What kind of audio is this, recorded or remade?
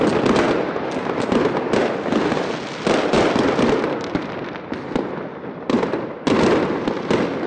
recorded